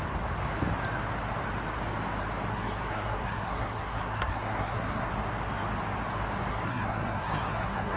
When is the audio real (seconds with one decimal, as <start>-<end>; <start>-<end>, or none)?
0.0-2.5; 5.1-6.5